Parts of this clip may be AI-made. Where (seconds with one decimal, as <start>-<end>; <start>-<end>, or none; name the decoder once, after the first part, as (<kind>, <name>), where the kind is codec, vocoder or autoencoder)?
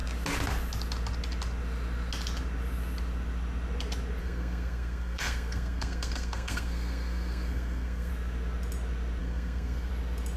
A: 4.2-8.1 (codec, SNAC); 9.2-9.9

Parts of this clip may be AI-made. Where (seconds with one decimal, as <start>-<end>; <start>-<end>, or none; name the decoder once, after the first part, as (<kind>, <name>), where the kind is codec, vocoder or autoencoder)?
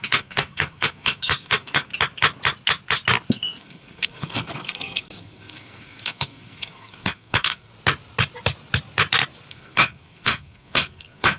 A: 0.0-1.9 (codec, SNAC); 3.3-7.7; 9.5-11.4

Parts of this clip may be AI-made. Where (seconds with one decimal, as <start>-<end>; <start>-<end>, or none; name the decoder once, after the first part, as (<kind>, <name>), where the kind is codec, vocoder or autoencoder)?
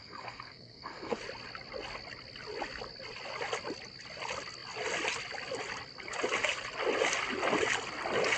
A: 0.0-1.2 (codec, SNAC)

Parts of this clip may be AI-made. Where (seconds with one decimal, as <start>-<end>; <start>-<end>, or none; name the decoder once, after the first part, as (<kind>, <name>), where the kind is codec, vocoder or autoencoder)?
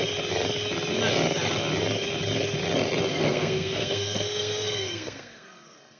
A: 3.1-6.0 (codec, SNAC)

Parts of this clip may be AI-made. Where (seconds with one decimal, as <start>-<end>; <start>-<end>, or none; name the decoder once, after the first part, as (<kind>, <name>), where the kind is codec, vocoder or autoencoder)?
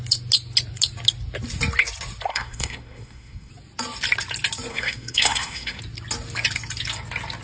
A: 2.3-3.5 (codec, SNAC); 4.7-5.8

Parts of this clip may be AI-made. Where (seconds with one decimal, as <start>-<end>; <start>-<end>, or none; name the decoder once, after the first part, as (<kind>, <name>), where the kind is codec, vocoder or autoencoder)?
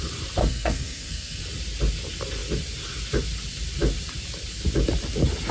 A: 0.4-1.4 (codec, SNAC)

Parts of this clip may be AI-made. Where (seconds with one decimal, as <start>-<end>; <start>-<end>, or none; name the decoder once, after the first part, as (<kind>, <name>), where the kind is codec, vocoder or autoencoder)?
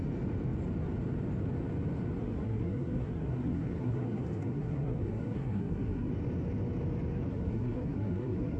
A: 2.2-6.1 (codec, SNAC); 7.3-8.6